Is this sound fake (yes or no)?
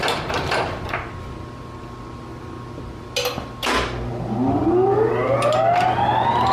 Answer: no